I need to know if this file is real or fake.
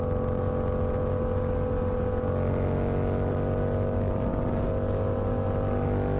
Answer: real